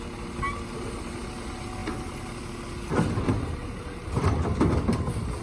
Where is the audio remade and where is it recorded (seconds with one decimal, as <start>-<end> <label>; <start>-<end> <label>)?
0.0-3.6 recorded; 3.6-4.3 remade; 4.3-5.4 recorded

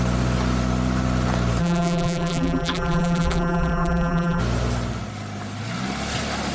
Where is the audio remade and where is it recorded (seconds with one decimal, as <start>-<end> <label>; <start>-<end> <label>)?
0.0-1.6 recorded; 1.6-4.4 remade; 4.4-6.5 recorded

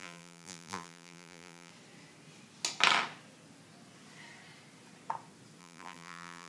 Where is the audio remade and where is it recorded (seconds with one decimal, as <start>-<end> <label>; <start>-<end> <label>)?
0.0-1.7 remade; 1.7-5.6 recorded; 5.6-6.5 remade

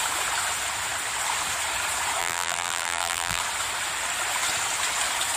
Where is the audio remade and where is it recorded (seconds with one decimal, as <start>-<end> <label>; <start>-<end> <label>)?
0.0-2.2 recorded; 2.2-3.4 remade; 3.4-5.4 recorded